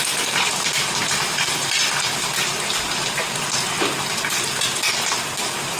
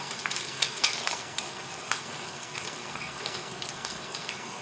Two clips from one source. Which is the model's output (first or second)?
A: second